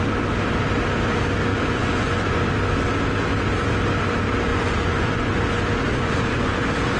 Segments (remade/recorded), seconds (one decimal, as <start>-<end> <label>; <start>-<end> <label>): 0.0-1.5 recorded; 1.5-2.4 remade; 2.4-4.5 recorded; 4.5-5.4 remade; 5.4-5.9 recorded; 5.9-6.6 remade; 6.6-7.0 recorded